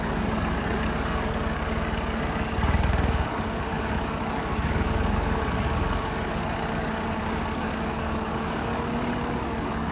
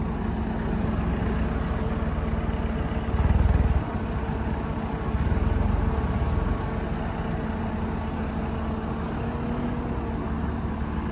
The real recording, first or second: second